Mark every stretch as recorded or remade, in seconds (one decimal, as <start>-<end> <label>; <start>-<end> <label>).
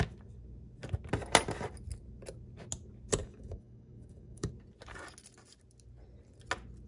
0.0-3.2 recorded; 3.2-4.5 remade; 4.5-6.9 recorded